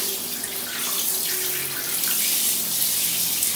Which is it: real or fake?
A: real